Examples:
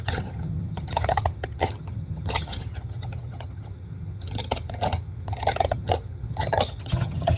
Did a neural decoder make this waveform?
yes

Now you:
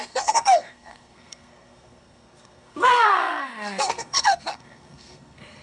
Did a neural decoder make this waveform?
yes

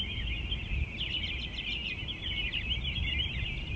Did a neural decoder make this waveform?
no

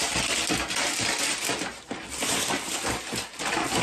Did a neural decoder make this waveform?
no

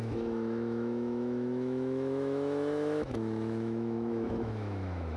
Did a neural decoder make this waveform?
yes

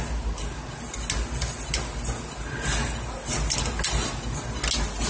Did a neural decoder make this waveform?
no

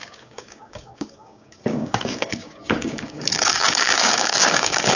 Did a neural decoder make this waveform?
yes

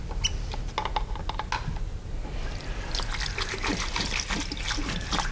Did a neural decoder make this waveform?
no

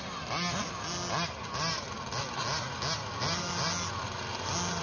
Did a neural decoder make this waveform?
no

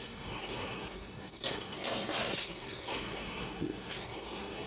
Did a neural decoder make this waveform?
yes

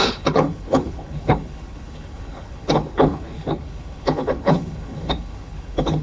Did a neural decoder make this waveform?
yes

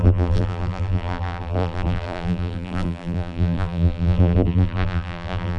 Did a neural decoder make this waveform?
yes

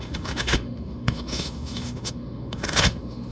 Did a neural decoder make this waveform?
yes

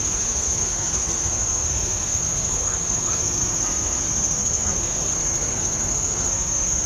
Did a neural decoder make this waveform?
yes